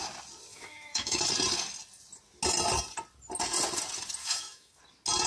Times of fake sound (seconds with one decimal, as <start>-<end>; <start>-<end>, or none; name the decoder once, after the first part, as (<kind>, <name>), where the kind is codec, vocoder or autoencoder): 0.5-1.2 (autoencoder, DAC-VAE); 4.2-4.8